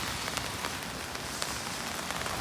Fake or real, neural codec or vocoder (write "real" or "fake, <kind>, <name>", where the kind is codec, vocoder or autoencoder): real